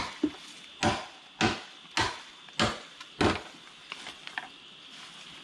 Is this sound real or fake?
real